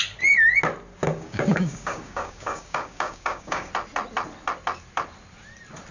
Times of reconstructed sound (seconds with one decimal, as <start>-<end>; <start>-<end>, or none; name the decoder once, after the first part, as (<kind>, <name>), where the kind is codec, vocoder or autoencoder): 1.0-3.7 (codec, DAC)